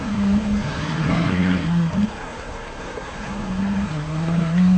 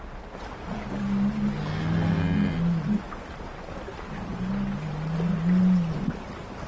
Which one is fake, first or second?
first